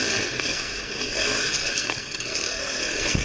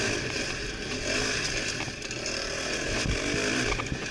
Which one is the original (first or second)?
second